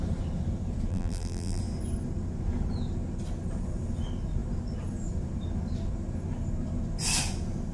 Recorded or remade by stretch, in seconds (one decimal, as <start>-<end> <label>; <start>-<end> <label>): 0.0-0.9 recorded; 0.9-1.6 remade; 1.6-7.7 recorded

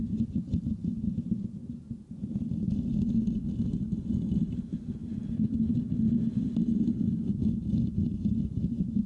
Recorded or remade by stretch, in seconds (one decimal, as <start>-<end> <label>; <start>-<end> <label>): 0.0-9.1 recorded

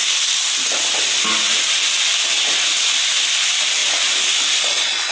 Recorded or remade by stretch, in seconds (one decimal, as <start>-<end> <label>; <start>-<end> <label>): 0.0-5.1 recorded

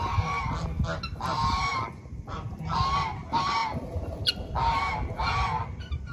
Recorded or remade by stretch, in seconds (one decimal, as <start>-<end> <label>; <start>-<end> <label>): 0.0-1.7 recorded; 1.7-2.6 remade; 2.6-3.6 recorded; 3.6-4.3 remade; 4.3-6.1 recorded

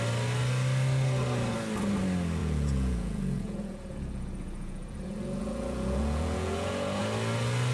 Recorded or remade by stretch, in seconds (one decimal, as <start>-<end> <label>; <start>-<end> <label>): 0.0-2.4 recorded; 2.4-7.0 remade; 7.0-7.7 recorded

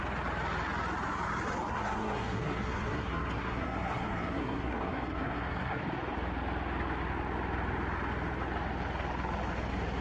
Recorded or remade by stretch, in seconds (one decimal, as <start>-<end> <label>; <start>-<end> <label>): 0.0-1.7 recorded; 1.7-5.8 remade; 5.8-10.0 recorded